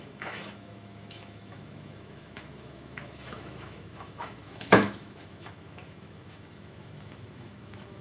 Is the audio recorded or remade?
remade